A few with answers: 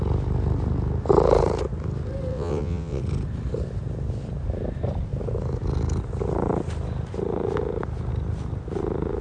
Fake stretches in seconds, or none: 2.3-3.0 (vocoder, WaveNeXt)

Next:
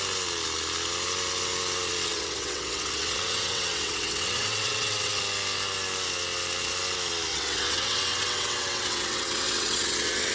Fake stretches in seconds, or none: 2.1-5.2 (vocoder, WaveNeXt); 7.3-10.3

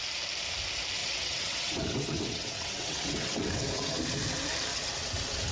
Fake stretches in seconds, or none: 1.0-4.0 (vocoder, WaveNeXt); 4.7-5.5